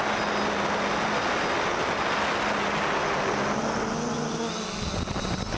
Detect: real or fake real